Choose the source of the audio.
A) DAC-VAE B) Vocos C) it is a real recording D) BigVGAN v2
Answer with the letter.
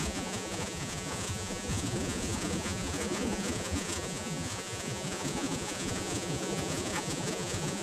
B